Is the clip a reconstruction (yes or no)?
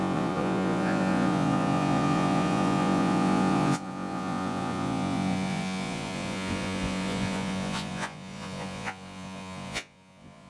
yes